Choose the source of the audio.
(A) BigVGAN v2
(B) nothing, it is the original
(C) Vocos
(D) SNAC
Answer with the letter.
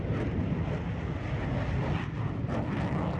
B